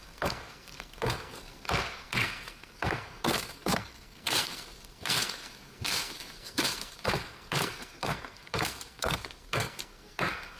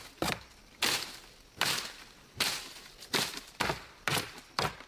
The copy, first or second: first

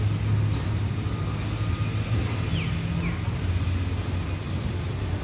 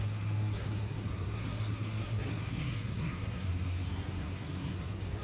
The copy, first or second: second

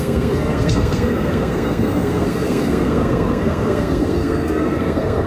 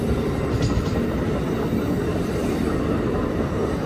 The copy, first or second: first